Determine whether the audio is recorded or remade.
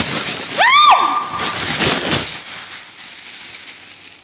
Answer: recorded